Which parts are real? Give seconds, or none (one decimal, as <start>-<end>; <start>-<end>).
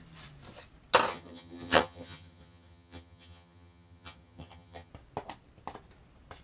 0.0-1.1; 4.9-6.4